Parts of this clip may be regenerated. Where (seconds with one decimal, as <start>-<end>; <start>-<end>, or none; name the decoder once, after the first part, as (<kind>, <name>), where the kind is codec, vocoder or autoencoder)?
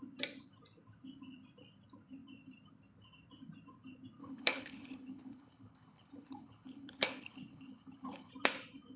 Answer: 4.2-8.3 (codec, HILCodec)